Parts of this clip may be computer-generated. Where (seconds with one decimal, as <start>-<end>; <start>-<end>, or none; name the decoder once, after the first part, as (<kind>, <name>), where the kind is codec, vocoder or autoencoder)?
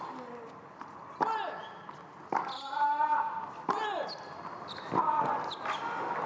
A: none